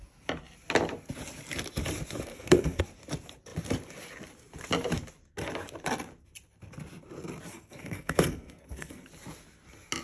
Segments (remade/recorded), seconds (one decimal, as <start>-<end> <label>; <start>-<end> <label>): 0.0-2.3 recorded; 2.3-2.8 remade; 2.8-7.5 recorded; 7.5-9.1 remade; 9.1-10.0 recorded